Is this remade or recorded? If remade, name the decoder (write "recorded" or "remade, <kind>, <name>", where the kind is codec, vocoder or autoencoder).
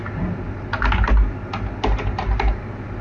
recorded